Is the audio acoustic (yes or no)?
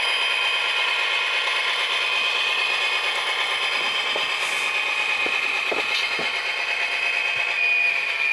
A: yes